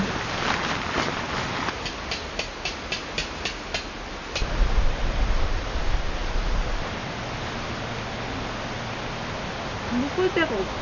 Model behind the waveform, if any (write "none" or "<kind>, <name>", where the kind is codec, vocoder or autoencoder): none